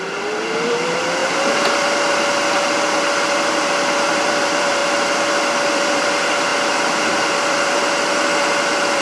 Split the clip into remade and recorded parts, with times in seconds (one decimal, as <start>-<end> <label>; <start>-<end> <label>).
0.0-1.2 remade; 1.2-4.1 recorded; 4.1-4.8 remade; 4.8-5.3 recorded; 5.3-6.5 remade; 6.5-7.1 recorded; 7.1-9.0 remade